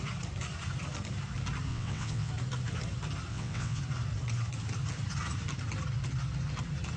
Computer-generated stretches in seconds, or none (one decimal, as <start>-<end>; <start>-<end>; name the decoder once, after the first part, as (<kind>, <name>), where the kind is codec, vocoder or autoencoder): 1.7-2.3 (vocoder, WaveNeXt); 3.3-3.8